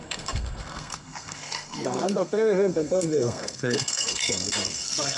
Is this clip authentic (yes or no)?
no